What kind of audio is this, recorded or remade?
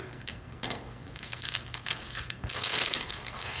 remade